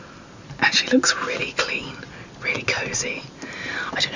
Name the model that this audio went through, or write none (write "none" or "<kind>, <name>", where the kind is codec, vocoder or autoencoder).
none